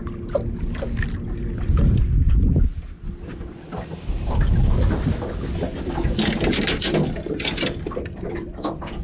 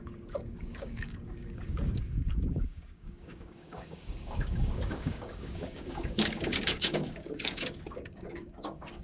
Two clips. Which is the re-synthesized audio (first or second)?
second